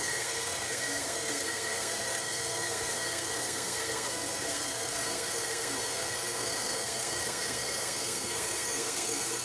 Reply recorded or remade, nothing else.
remade